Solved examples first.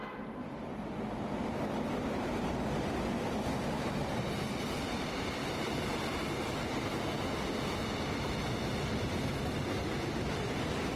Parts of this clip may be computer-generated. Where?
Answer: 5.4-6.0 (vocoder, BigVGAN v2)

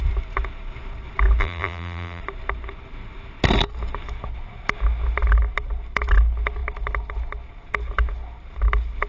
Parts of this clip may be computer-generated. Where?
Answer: 1.4-2.2 (vocoder, BigVGAN v2)

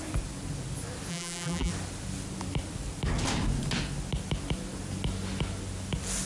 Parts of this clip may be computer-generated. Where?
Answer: 1.1-1.7 (vocoder, BigVGAN v2)

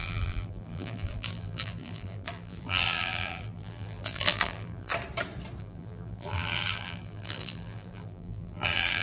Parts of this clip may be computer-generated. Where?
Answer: 0.0-4.9 (vocoder, BigVGAN v2); 5.6-9.0

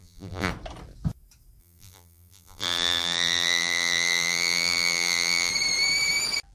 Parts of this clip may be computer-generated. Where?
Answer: 0.0-0.5 (vocoder, BigVGAN v2); 1.6-5.5

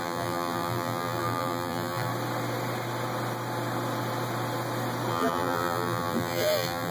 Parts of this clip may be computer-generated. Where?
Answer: 0.0-2.1 (vocoder, BigVGAN v2); 5.1-6.9

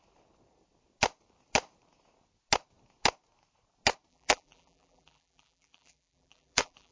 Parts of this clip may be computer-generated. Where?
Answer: 4.1-6.9 (vocoder, BigVGAN v2)

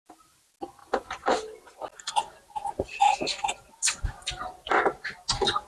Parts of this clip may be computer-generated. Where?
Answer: none